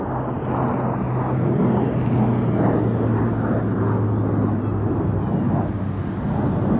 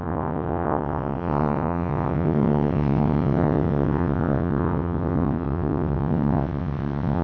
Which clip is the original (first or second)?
first